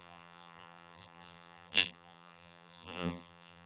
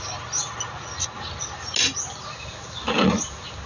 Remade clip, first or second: first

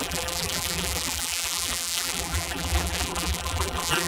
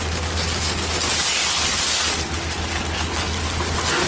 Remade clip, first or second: first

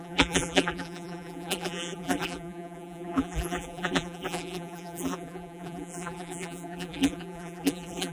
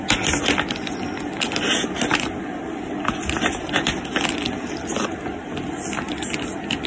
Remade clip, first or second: first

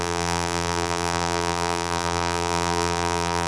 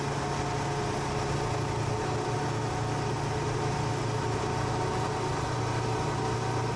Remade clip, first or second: first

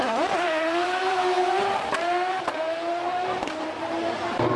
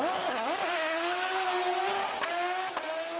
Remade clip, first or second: first